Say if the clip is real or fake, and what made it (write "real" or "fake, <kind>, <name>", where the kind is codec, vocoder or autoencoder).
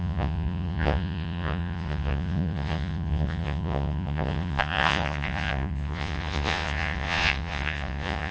fake, vocoder, Vocos